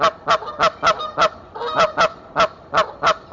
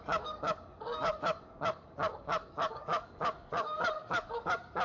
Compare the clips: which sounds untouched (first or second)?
first